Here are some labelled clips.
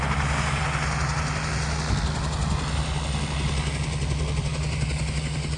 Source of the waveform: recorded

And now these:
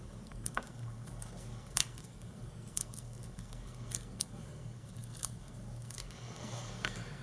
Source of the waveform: remade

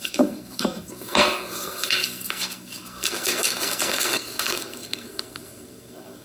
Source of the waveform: remade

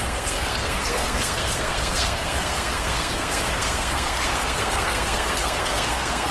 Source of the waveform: remade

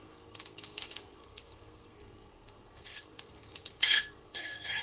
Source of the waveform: remade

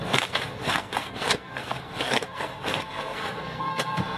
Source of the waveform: remade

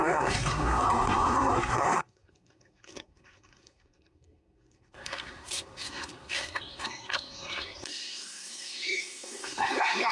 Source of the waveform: remade